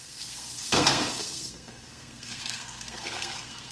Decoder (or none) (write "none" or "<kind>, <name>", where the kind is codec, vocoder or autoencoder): codec, SNAC